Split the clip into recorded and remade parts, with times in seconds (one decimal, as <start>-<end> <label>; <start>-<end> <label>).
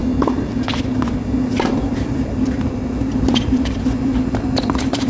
0.0-5.1 remade